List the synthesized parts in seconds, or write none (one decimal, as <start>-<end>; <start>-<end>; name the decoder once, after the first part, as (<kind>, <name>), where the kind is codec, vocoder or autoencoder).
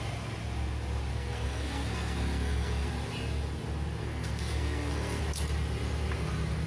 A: 1.1-2.9 (codec, SNAC); 4.0-5.2